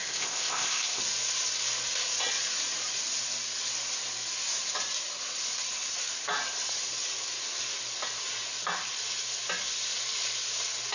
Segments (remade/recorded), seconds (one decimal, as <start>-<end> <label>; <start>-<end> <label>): 0.0-1.0 remade; 1.0-10.9 recorded